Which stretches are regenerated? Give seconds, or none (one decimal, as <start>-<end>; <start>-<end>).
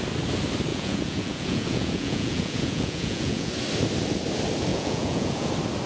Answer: 0.7-3.5; 4.7-5.5